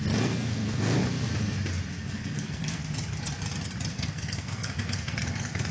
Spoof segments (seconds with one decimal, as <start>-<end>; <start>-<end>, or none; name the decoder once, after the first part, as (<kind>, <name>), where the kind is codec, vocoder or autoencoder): 0.0-1.0 (codec, SNAC); 2.1-2.8; 3.9-5.7